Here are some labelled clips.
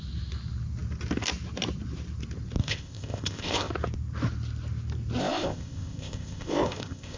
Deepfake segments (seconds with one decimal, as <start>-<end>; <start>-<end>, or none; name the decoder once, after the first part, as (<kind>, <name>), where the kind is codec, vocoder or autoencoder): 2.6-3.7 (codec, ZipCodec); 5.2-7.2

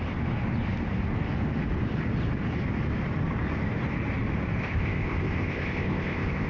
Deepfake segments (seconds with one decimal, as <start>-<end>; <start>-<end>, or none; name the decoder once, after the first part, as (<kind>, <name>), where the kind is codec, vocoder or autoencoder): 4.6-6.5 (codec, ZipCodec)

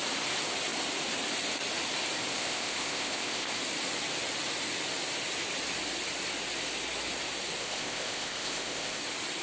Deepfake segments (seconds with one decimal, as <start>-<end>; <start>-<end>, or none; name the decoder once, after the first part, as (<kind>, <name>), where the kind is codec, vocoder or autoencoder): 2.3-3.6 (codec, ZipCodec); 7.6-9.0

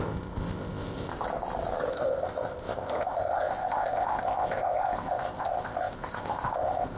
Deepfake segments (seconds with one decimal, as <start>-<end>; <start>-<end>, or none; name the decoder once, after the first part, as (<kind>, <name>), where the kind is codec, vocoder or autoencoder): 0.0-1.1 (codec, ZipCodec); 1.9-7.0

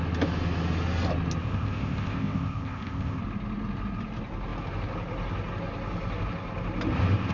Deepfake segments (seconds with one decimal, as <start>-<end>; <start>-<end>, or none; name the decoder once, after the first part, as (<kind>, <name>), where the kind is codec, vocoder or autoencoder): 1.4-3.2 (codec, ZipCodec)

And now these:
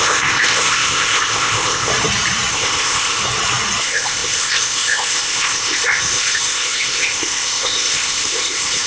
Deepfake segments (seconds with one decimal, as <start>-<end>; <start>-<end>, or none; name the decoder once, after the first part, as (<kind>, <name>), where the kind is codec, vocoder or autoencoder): 0.0-1.9 (codec, ZipCodec); 2.5-3.2; 3.8-8.9

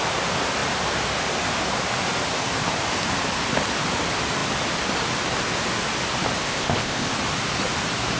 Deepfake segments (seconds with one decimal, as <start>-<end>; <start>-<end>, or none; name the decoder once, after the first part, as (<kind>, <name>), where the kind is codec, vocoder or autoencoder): 6.4-7.1 (codec, ZipCodec)